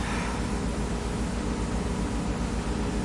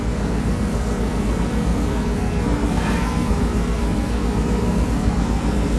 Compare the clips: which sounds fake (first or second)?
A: second